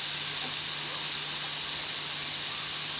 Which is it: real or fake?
real